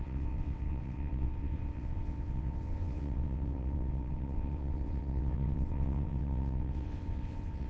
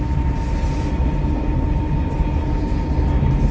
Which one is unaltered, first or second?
second